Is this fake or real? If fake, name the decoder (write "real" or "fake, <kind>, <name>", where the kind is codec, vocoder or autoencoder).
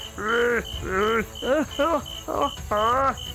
real